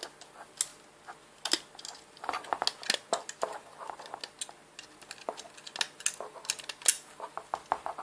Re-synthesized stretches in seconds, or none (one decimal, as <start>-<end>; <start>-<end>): none